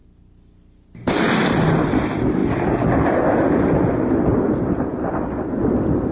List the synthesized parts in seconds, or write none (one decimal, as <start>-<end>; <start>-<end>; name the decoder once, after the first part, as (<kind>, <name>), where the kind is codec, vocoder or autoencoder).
0.0-4.9 (vocoder, BigVGAN v2); 5.6-6.1

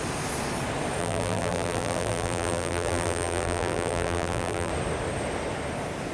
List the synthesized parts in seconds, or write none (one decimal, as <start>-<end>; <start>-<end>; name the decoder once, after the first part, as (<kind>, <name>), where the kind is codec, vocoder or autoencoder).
1.0-4.7 (vocoder, BigVGAN v2)

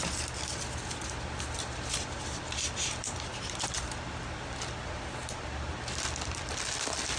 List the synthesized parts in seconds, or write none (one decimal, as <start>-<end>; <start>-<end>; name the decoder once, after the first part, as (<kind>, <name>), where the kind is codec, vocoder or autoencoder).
0.8-7.2 (vocoder, BigVGAN v2)

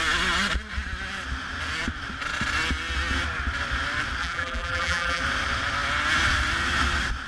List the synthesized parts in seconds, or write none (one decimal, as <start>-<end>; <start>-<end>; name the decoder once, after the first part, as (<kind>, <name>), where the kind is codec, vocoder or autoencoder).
4.2-5.2 (vocoder, BigVGAN v2)

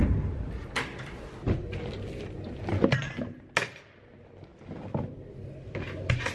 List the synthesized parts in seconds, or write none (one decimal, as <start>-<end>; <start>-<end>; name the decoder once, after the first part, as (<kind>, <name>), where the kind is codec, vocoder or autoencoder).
0.0-0.5 (vocoder, BigVGAN v2)

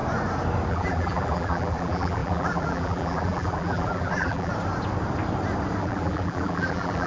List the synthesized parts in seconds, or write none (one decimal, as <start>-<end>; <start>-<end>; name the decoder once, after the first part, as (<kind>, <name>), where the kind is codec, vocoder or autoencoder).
0.7-4.5 (vocoder, BigVGAN v2); 5.8-7.1

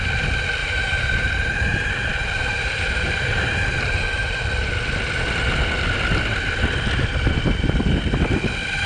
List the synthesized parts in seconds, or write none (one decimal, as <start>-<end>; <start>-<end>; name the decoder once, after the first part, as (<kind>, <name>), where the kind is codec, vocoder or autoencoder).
0.6-4.4 (vocoder, BigVGAN v2)